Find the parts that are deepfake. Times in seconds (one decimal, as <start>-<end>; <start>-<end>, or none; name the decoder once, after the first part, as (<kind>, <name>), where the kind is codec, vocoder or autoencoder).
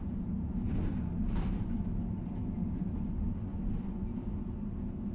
none